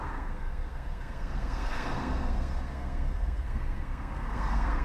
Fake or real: fake